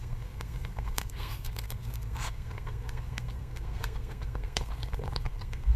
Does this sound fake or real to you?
fake